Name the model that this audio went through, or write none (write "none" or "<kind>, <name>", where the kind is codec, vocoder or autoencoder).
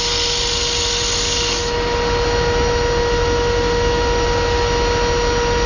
none